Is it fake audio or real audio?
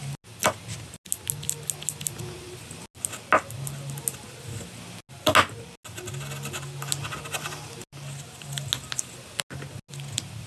real